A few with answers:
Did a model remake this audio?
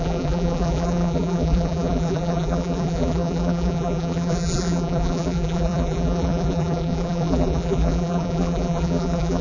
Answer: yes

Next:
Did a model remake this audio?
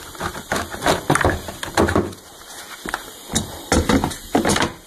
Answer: no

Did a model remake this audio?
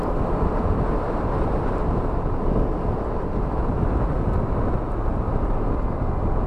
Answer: no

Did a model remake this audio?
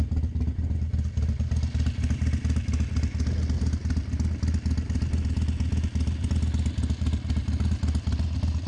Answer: no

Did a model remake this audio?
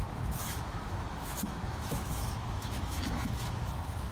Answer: yes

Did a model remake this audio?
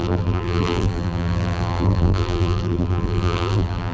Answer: yes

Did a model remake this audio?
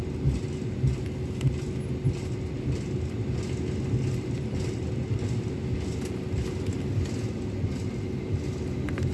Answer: no